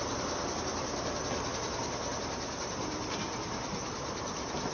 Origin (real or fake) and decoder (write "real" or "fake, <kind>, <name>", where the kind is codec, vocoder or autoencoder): real